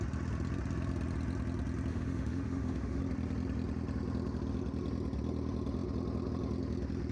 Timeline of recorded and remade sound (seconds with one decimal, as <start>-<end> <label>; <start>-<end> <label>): 0.0-1.9 recorded; 1.9-3.0 remade; 3.0-7.1 recorded